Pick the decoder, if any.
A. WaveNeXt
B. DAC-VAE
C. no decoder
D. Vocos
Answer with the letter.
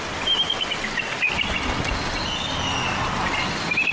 C